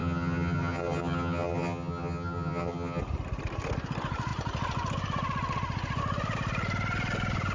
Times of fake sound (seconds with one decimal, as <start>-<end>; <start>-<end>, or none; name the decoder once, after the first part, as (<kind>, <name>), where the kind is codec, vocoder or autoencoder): 0.0-3.0 (vocoder, HiFi-GAN)